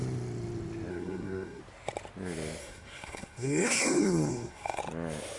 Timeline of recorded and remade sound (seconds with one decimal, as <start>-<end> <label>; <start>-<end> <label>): 0.0-0.9 recorded; 0.9-1.6 remade; 1.6-2.6 recorded; 2.6-4.8 remade; 4.8-5.4 recorded